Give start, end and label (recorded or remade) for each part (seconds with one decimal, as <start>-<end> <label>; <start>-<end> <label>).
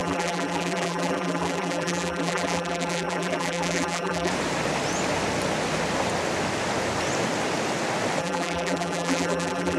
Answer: 0.0-4.3 remade; 4.3-8.2 recorded; 8.2-9.8 remade